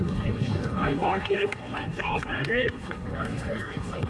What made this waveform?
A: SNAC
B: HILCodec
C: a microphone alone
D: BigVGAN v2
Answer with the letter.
A